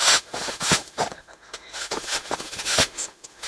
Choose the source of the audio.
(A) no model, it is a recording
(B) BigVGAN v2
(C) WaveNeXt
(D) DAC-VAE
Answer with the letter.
D